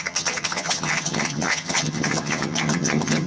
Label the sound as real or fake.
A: fake